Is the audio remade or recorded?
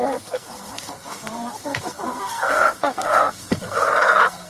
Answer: remade